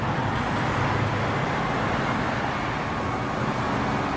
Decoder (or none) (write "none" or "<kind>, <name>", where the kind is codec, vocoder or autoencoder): none